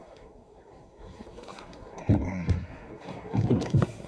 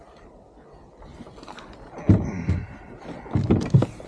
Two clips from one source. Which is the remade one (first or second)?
first